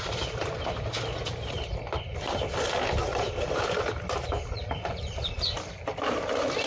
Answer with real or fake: real